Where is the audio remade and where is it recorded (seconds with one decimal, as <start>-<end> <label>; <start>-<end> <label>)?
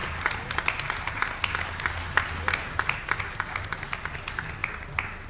0.0-5.3 recorded